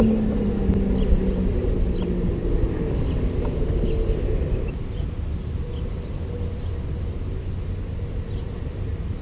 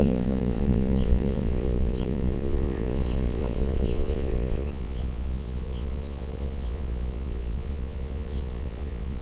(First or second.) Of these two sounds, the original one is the first